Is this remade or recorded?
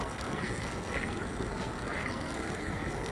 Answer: remade